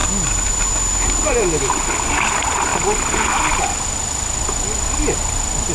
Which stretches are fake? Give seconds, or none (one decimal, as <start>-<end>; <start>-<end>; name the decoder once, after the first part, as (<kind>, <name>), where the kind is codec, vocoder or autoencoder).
none